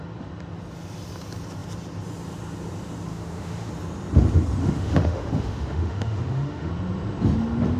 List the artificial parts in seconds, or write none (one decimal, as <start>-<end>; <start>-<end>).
3.1-3.7; 4.6-6.7